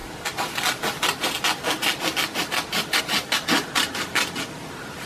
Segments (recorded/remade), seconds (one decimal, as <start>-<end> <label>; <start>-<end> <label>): 0.0-5.1 recorded